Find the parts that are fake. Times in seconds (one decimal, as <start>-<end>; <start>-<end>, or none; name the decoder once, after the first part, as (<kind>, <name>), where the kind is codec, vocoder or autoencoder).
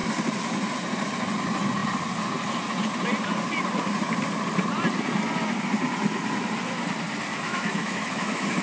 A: 7.3-8.6 (autoencoder, DAC-VAE)